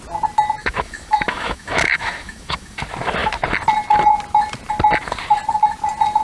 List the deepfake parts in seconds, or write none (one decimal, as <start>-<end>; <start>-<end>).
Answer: 0.6-2.8